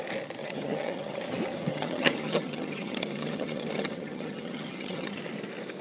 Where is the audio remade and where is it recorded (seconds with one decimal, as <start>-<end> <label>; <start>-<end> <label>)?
0.0-0.4 recorded; 0.4-1.2 remade; 1.2-1.7 recorded; 1.7-5.2 remade; 5.2-5.8 recorded